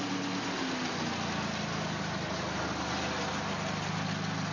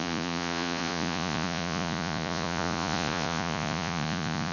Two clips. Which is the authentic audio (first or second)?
first